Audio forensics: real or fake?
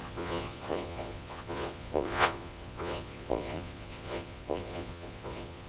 fake